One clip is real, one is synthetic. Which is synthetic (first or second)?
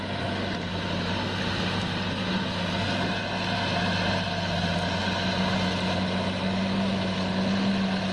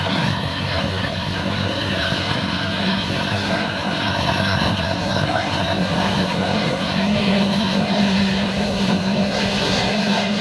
second